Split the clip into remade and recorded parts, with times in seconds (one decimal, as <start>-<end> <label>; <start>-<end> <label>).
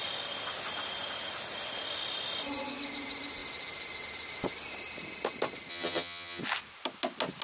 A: 0.0-5.7 recorded; 5.7-6.4 remade; 6.4-7.4 recorded